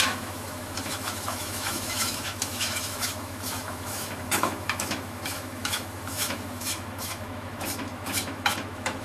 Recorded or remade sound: remade